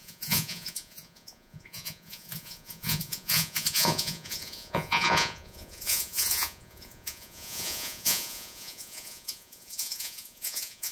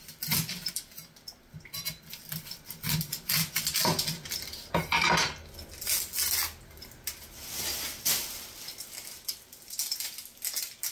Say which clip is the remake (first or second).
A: first